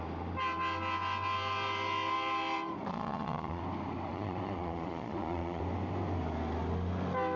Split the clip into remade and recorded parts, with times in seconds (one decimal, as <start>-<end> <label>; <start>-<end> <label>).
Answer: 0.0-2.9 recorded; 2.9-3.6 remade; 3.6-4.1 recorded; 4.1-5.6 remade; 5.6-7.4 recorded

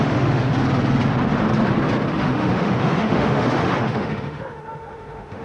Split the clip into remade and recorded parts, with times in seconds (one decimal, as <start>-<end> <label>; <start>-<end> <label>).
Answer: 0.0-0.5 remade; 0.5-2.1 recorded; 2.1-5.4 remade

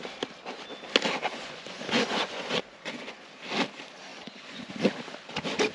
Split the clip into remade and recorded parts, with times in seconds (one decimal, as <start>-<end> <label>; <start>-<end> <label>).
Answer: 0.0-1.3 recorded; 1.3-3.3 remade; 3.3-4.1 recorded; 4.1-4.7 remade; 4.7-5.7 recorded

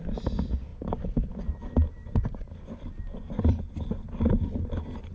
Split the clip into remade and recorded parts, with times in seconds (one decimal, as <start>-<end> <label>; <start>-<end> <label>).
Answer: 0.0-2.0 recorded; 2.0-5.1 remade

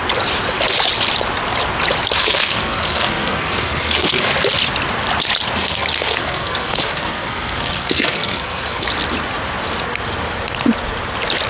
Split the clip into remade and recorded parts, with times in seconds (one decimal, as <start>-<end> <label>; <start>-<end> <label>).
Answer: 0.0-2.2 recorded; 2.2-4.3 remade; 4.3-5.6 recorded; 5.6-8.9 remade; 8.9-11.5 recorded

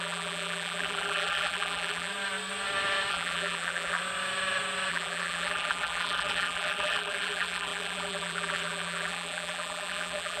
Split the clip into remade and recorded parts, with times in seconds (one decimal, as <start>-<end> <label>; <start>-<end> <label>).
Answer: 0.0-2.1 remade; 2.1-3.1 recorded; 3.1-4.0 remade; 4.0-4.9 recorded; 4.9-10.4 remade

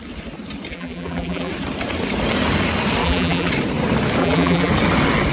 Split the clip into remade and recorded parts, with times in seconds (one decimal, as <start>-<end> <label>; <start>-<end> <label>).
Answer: 0.0-0.7 recorded; 0.7-1.5 remade; 1.5-3.0 recorded; 3.0-3.5 remade; 3.5-4.2 recorded; 4.2-4.7 remade; 4.7-5.3 recorded

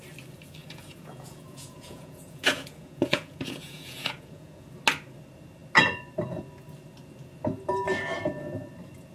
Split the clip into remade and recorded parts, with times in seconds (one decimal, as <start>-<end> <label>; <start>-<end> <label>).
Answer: 0.0-0.6 recorded; 0.6-4.7 remade; 4.7-9.1 recorded